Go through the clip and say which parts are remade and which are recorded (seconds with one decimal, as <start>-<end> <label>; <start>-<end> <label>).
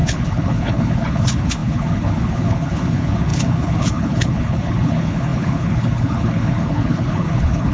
0.0-7.7 remade